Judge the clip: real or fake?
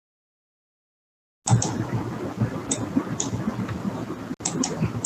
real